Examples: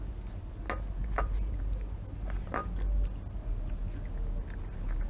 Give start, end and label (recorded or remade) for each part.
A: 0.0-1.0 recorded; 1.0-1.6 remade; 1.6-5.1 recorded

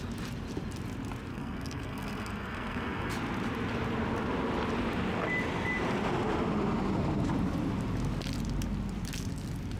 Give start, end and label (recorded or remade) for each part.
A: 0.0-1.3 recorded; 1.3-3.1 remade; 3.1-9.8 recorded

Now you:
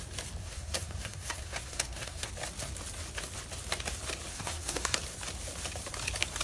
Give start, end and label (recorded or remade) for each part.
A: 0.0-0.4 recorded; 0.4-2.3 remade; 2.3-4.3 recorded; 4.3-5.0 remade; 5.0-6.4 recorded

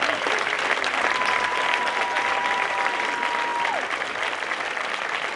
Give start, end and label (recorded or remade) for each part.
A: 0.0-1.5 recorded; 1.5-3.1 remade; 3.1-5.4 recorded